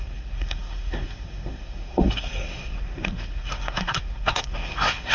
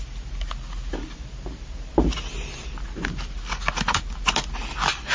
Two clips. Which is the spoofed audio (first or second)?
first